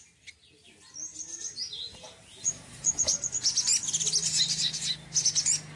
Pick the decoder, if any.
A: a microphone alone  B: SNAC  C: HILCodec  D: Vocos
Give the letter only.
A